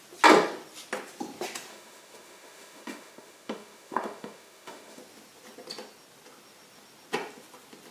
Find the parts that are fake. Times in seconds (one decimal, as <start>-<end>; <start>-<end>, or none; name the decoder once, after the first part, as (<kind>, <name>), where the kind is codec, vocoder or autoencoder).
1.7-5.0 (autoencoder, DAC-VAE)